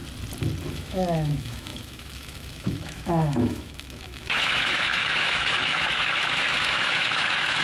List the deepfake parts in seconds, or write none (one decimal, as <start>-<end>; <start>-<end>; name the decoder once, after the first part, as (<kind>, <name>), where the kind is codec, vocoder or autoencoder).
0.7-7.6 (autoencoder, DAC-VAE)